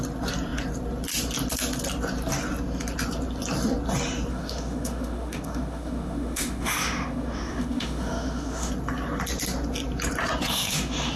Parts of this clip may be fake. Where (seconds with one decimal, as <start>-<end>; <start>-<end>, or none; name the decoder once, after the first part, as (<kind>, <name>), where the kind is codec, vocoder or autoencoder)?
4.3-8.7 (autoencoder, DAC-VAE); 10.5-11.2